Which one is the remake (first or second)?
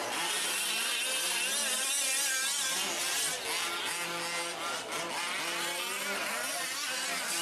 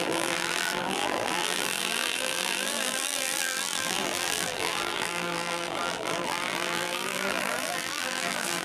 second